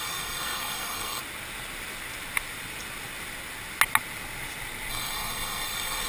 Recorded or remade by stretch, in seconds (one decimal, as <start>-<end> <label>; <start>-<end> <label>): 0.0-1.2 remade; 1.2-4.9 recorded; 4.9-6.1 remade